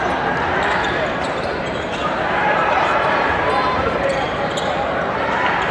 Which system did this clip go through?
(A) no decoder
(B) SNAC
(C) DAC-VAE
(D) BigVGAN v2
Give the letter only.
D